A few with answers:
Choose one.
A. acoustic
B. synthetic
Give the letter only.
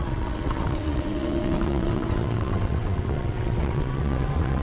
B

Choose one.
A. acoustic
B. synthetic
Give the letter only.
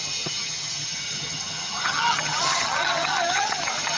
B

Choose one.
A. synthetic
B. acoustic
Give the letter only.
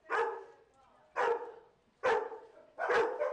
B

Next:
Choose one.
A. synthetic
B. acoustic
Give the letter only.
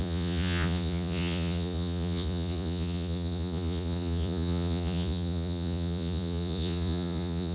A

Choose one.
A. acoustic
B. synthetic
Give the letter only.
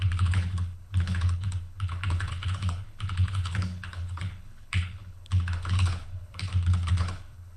B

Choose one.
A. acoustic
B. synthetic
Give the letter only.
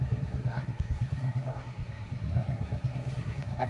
B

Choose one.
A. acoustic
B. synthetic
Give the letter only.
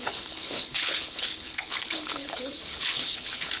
B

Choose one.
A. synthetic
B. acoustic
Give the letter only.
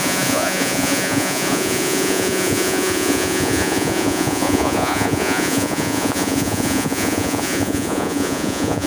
A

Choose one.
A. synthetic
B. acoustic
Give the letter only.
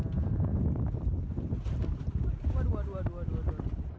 B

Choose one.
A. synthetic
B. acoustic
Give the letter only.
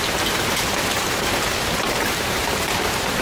A